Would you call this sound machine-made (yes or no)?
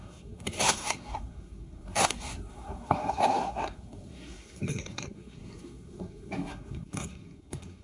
yes